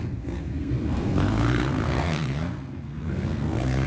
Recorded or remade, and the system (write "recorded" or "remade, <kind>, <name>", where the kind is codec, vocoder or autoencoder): remade, codec, SNAC